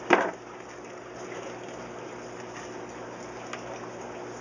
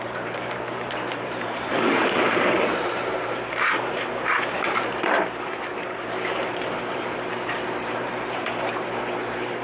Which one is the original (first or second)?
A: first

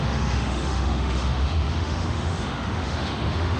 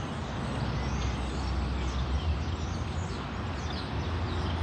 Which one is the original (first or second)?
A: second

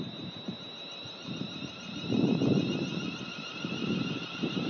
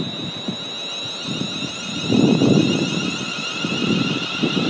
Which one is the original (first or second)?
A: second